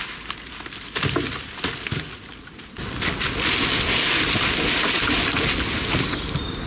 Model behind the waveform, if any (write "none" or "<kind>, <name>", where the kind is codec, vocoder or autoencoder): none